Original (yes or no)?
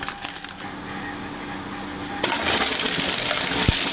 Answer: yes